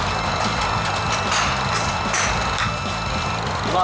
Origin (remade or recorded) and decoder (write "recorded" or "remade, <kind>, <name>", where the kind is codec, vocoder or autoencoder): recorded